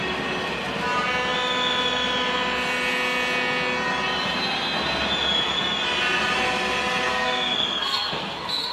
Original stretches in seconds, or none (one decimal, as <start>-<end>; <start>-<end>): 0.0-7.1